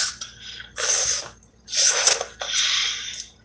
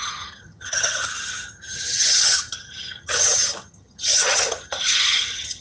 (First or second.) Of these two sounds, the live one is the first